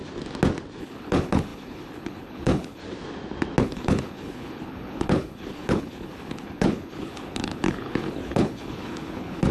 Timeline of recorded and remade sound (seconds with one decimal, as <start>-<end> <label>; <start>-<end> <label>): 0.0-0.8 recorded; 0.8-2.8 remade; 2.8-3.6 recorded; 3.6-9.5 remade

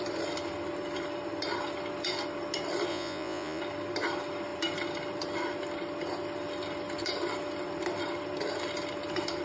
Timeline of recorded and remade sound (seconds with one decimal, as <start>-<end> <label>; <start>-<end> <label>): 0.0-2.9 recorded; 2.9-3.6 remade; 3.6-9.4 recorded